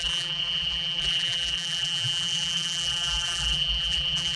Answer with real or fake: fake